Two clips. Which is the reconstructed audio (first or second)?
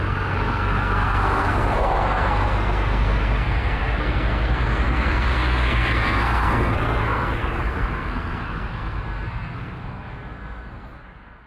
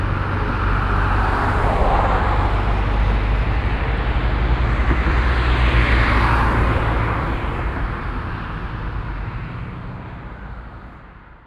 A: first